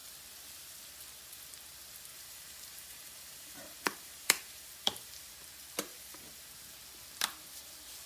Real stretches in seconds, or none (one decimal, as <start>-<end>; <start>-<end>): 0.0-2.1; 5.3-5.9; 6.5-8.1